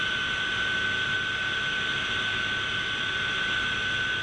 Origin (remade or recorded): recorded